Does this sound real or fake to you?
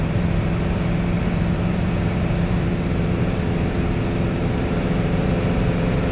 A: fake